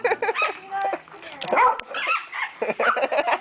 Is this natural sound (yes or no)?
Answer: yes